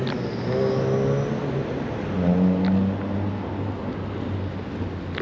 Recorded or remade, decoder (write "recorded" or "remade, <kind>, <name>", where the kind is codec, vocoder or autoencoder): recorded